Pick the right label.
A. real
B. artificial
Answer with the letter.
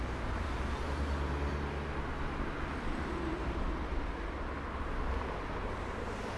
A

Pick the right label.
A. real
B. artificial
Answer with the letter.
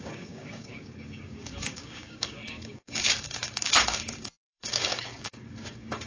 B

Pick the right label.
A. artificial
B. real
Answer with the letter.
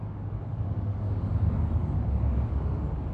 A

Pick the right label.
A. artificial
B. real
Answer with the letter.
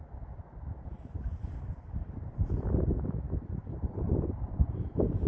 B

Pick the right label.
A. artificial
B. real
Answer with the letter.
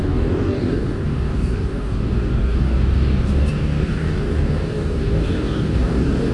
A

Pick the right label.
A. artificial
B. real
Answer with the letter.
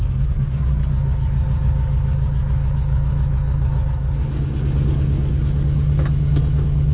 A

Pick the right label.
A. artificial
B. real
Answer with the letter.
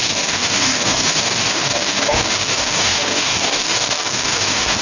A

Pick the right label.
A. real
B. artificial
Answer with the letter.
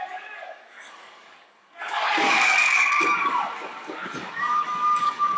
B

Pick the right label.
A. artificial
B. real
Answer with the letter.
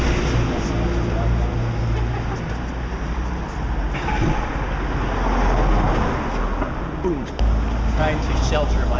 B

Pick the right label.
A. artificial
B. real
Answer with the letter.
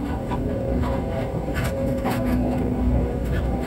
A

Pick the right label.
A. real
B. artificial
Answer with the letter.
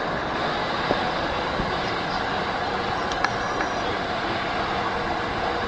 A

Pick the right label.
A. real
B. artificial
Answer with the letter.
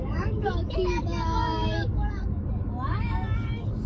B